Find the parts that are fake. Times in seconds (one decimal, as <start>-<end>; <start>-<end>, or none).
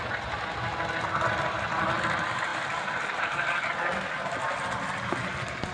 none